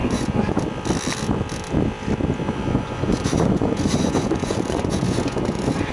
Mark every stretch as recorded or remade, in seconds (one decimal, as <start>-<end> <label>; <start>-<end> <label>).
0.0-0.6 remade; 0.6-2.4 recorded; 2.4-5.9 remade